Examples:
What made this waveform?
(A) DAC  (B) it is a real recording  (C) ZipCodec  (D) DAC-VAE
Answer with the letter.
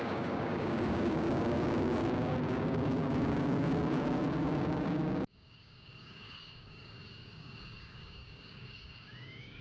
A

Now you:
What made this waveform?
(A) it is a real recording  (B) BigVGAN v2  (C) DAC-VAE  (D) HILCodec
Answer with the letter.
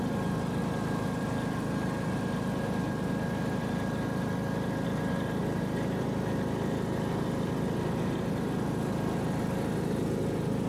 A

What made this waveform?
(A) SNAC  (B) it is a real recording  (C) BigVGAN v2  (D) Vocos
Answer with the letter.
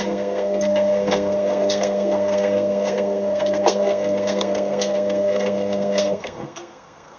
A